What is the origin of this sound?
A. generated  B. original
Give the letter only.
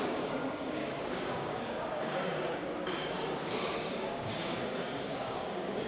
A